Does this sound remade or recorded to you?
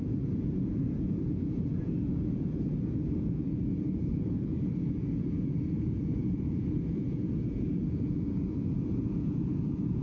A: remade